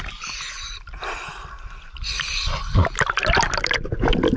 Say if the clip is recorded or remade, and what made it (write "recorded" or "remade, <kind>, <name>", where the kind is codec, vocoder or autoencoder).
recorded